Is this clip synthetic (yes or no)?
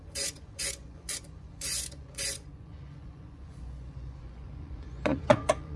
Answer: yes